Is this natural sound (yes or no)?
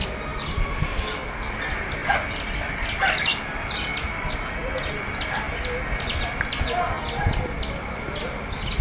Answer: yes